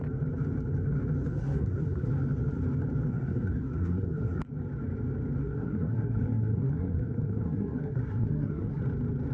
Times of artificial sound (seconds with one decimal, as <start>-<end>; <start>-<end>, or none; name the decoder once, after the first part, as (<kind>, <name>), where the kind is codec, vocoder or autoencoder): 1.3-2.1 (codec, SNAC); 3.1-4.4; 5.4-8.8